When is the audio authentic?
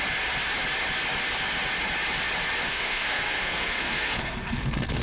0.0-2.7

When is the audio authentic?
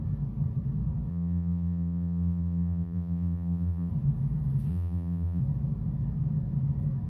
0.0-1.1; 3.9-4.7; 5.4-7.1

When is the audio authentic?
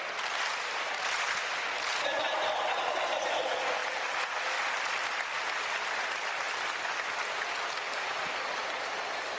0.0-9.4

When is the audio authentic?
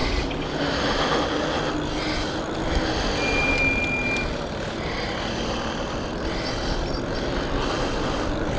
0.0-8.6